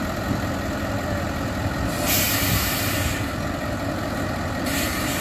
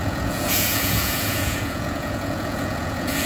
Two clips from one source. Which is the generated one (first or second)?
second